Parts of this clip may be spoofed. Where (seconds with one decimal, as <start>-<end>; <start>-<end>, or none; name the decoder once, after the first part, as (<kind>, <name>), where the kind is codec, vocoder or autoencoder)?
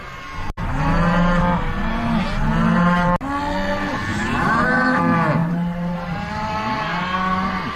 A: 4.1-5.0 (vocoder, BigVGAN v2); 5.4-6.5